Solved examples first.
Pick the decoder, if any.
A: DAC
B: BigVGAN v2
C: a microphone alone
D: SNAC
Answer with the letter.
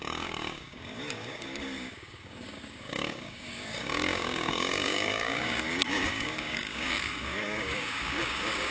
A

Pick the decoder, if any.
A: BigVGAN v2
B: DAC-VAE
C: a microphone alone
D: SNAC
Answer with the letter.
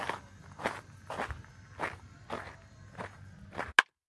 C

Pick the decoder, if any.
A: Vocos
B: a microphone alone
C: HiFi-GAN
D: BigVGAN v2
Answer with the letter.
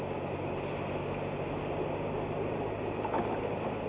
B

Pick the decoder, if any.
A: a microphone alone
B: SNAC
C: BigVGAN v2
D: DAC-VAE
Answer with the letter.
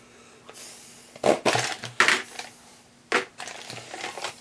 A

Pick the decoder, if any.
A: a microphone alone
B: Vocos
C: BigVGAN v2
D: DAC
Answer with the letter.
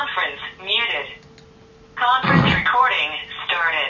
A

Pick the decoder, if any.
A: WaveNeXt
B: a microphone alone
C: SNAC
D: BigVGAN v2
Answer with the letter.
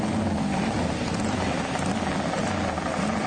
B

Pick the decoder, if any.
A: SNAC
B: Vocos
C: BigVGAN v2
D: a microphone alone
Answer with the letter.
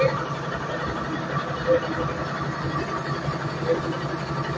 D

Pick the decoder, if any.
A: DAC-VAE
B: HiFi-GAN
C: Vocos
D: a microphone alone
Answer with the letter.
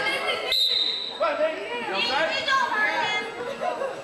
D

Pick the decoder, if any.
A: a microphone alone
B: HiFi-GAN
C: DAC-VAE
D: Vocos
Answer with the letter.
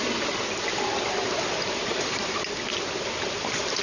A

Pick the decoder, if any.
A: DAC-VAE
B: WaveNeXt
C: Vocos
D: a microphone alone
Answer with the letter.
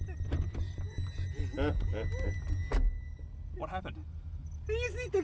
D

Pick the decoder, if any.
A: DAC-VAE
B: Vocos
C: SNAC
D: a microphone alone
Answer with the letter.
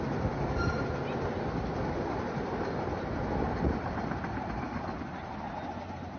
D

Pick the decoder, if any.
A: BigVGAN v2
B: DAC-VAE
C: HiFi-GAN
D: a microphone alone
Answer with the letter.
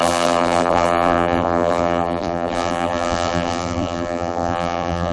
A